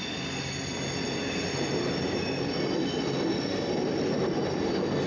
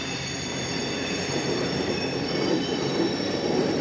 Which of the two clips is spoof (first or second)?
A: second